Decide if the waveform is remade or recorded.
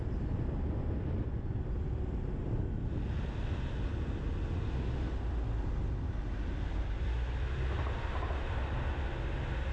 recorded